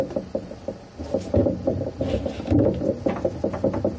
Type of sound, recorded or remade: recorded